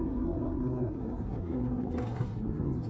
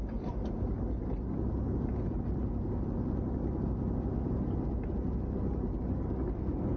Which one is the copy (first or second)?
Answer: first